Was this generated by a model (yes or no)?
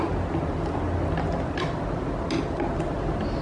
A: no